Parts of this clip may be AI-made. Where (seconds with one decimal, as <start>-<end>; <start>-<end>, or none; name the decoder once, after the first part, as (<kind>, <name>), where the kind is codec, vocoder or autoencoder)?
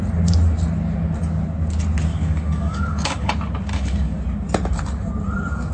2.1-3.3 (codec, DAC); 3.7-4.2